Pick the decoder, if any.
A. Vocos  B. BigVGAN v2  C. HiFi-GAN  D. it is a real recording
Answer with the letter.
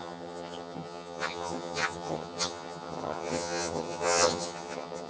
C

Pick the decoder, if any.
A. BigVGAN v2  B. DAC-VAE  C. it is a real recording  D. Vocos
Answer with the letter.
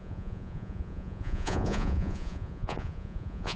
D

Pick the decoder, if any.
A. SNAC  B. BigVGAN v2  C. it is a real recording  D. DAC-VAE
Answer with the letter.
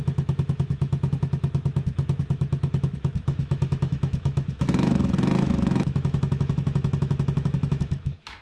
D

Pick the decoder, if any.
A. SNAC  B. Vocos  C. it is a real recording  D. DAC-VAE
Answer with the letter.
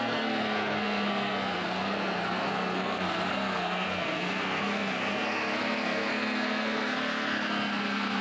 A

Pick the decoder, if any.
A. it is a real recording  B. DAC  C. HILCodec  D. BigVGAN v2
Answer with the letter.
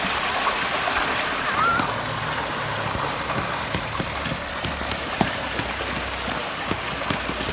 A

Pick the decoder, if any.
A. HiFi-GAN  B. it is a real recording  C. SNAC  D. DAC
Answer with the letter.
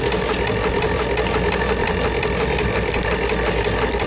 B